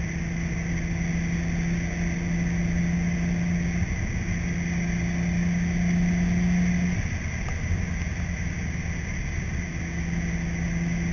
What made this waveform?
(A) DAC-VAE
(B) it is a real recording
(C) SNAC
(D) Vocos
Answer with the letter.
B